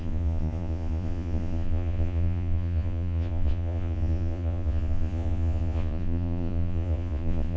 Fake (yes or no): yes